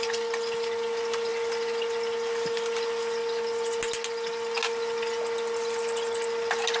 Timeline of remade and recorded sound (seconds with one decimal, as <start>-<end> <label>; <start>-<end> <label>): 0.0-6.8 recorded